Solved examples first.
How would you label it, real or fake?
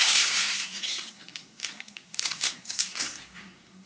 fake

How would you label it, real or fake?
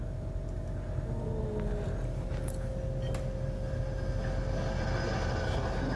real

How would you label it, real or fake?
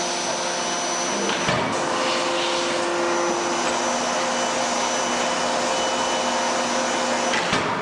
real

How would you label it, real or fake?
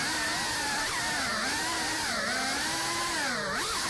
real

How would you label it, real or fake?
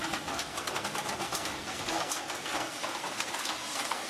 fake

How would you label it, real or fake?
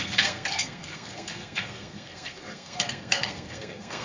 fake